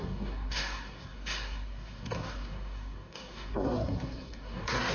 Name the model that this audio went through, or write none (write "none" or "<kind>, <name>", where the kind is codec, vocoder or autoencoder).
codec, SNAC